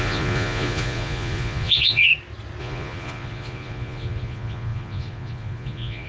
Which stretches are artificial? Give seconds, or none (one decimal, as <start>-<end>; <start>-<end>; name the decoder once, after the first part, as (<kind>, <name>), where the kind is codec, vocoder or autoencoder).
0.0-2.1 (vocoder, Vocos); 2.6-6.1